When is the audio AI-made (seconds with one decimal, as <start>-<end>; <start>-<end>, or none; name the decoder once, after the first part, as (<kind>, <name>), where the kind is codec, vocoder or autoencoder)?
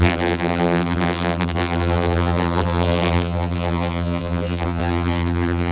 0.0-5.7 (vocoder, BigVGAN v2)